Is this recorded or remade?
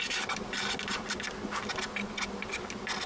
recorded